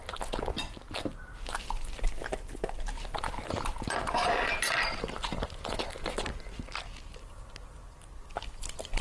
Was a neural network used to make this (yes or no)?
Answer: no